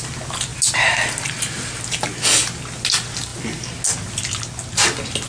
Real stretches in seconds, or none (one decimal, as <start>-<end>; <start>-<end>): 0.0-5.3